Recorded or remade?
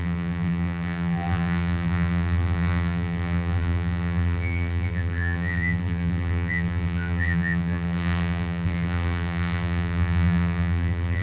remade